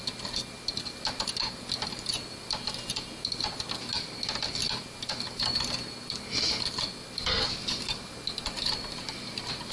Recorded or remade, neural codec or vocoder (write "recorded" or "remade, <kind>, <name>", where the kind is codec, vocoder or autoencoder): recorded